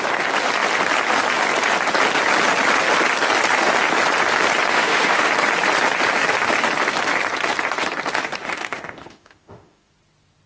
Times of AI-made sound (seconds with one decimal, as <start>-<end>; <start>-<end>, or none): 4.7-5.3; 8.4-9.9